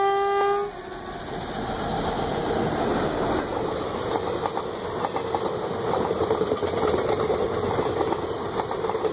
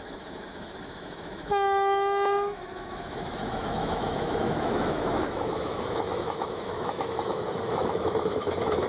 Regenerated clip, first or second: second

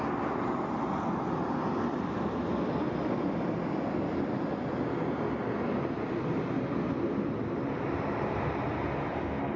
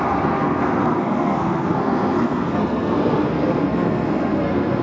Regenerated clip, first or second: second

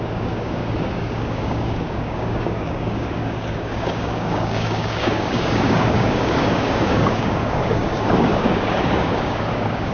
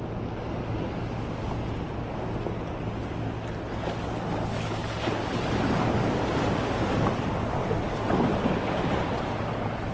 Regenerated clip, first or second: first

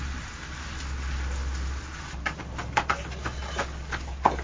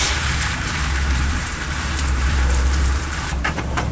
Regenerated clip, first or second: second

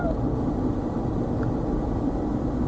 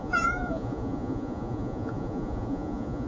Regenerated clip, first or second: second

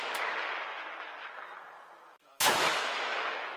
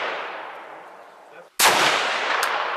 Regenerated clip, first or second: first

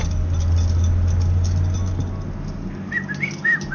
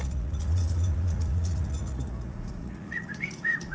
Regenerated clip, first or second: second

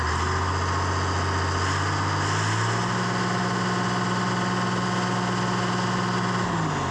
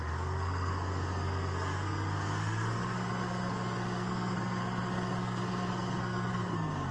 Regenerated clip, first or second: second